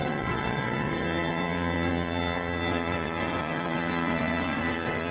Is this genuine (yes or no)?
no